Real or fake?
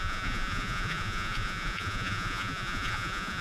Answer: fake